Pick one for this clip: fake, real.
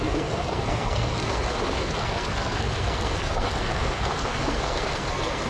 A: fake